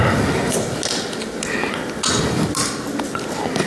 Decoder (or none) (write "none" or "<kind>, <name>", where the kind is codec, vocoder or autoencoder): none